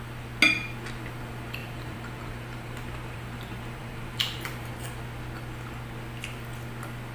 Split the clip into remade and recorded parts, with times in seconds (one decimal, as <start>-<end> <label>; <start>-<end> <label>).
0.0-1.6 recorded; 1.6-4.7 remade; 4.7-7.1 recorded